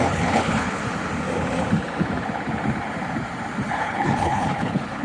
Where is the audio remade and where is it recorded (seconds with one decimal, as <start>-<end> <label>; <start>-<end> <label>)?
0.0-0.8 remade; 0.8-3.8 recorded; 3.8-5.0 remade